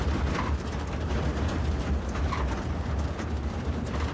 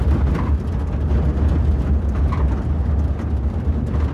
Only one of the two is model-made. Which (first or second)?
first